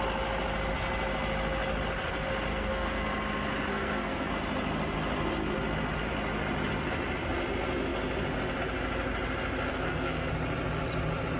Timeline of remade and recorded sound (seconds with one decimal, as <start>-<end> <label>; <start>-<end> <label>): 0.0-2.5 recorded; 2.5-3.0 remade; 3.0-3.7 recorded; 3.7-4.3 remade; 4.3-9.7 recorded; 9.7-10.3 remade; 10.3-11.4 recorded